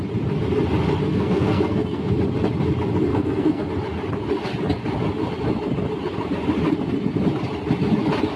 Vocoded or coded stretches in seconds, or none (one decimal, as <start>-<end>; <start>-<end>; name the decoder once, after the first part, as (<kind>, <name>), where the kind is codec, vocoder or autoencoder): 1.1-2.1 (codec, SNAC); 3.1-3.7